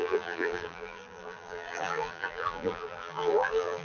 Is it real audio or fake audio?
fake